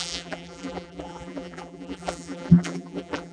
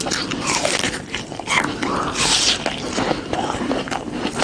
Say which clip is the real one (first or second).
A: second